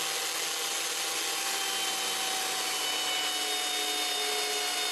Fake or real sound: real